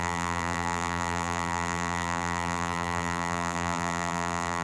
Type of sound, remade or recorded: remade